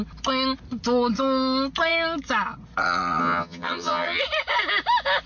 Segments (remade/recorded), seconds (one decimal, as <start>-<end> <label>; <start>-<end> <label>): 0.0-3.2 recorded; 3.2-4.2 remade; 4.2-5.3 recorded